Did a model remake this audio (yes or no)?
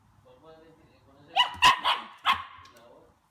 no